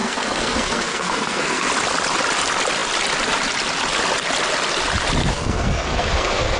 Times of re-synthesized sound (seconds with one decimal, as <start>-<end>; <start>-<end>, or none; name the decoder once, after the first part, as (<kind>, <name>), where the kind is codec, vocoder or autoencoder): 0.0-1.7 (codec, SNAC); 5.2-6.6